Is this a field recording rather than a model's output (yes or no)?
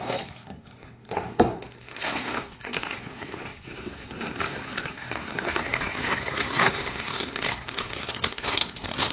no